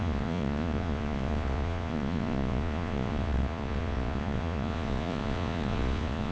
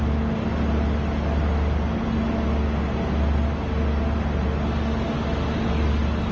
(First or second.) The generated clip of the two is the first